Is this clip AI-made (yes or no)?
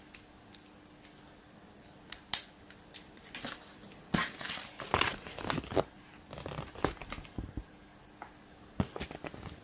no